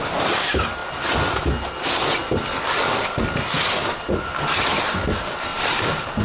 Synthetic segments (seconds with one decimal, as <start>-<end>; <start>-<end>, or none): 5.5-6.2